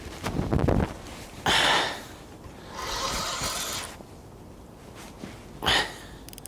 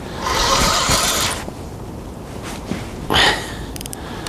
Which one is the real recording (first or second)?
first